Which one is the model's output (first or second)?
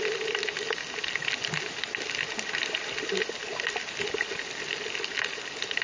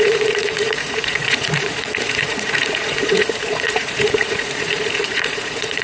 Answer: second